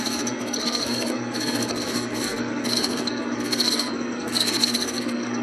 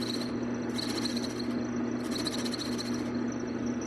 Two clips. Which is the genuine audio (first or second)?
second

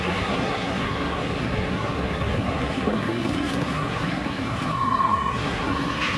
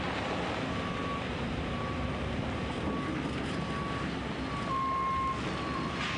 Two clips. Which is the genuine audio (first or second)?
second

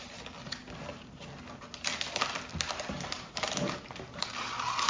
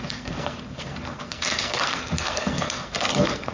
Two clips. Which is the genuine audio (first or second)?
first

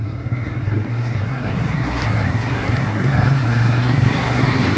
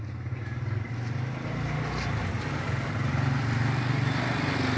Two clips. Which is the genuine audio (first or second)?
second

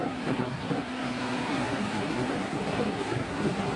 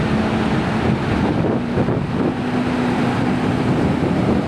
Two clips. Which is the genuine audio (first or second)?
second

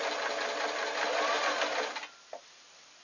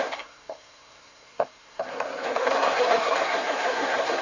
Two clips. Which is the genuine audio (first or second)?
first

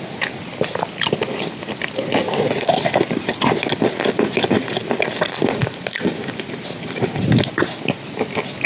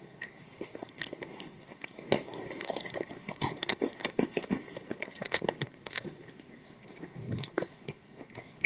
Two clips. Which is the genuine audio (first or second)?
first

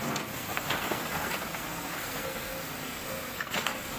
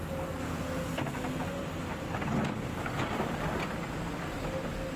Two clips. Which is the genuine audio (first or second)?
second